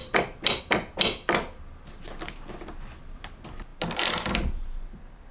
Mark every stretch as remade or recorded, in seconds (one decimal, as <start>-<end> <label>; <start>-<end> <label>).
0.0-5.3 recorded